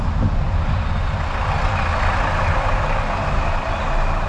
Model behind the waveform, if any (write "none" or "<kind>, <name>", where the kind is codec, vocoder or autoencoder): none